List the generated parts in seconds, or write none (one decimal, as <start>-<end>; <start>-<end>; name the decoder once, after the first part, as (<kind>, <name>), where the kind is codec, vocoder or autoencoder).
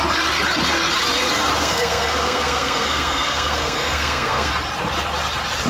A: 1.6-4.5 (codec, SNAC)